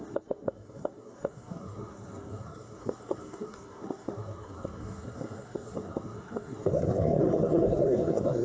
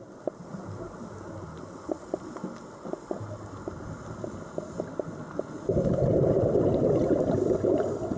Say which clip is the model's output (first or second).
first